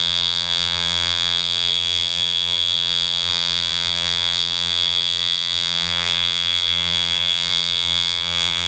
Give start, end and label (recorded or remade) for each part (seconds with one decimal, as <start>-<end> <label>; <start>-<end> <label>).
0.0-8.7 remade